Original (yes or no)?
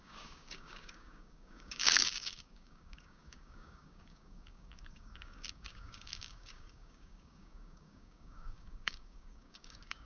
no